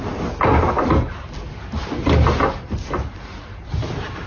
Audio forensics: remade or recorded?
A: recorded